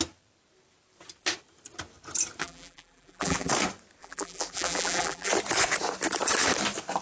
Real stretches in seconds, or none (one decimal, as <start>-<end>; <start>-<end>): 0.0-2.4; 3.5-4.0; 5.3-7.0